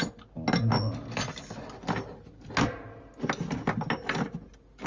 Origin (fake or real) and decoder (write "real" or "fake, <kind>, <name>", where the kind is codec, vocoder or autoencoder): real